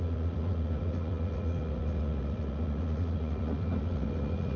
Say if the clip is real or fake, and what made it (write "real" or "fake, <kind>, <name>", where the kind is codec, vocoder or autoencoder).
fake, vocoder, Vocos